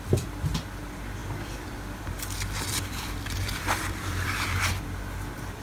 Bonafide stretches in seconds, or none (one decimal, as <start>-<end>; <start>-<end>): 0.0-1.2; 4.6-5.6